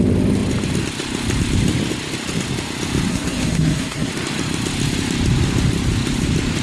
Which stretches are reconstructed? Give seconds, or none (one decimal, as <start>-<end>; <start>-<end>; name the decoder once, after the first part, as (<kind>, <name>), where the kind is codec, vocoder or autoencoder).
3.1-4.1 (codec, SNAC)